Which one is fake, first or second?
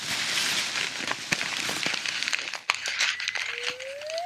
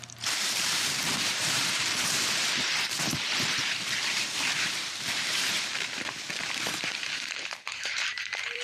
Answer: second